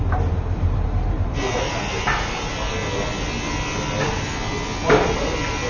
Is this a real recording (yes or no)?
yes